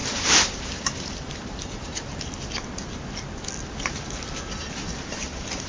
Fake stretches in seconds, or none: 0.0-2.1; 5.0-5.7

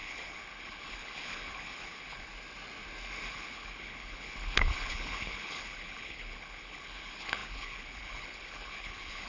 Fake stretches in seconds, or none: 0.0-2.3; 3.3-9.3

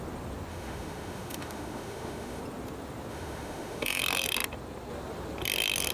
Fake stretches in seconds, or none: 0.5-2.4; 3.1-4.0

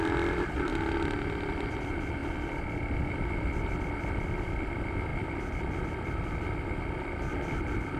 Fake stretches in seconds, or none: 0.0-0.7; 1.5-8.0

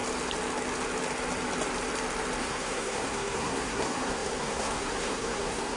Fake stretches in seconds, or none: 2.4-5.8

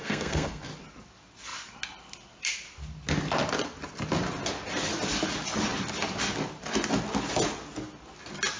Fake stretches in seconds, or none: 0.0-0.6

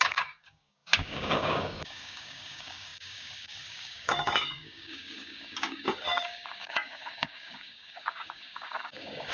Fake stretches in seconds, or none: 0.0-9.3